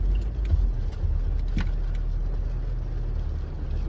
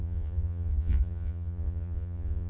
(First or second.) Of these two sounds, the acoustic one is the first